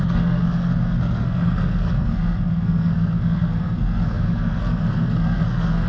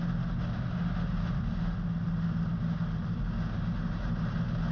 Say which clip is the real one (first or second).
second